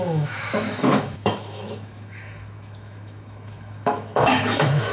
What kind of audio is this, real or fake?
fake